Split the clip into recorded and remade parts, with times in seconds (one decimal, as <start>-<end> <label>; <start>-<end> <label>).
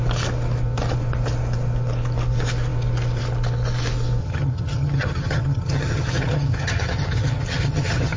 0.0-4.2 recorded; 4.2-8.2 remade